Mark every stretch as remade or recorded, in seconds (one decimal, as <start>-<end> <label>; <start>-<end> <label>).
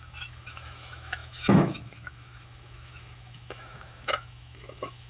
0.0-5.1 remade